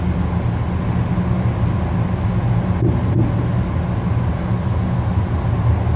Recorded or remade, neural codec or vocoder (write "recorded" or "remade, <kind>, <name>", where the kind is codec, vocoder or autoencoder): recorded